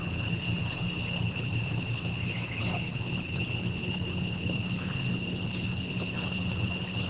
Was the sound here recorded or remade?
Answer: remade